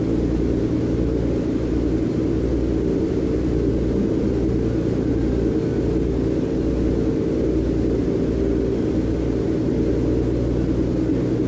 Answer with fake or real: real